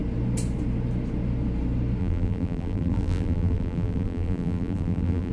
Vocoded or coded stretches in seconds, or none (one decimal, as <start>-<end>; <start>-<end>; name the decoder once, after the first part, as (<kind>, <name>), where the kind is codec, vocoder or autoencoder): 2.0-5.3 (vocoder, BigVGAN v2)